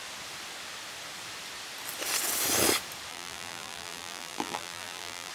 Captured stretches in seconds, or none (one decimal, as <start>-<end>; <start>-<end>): 0.0-3.1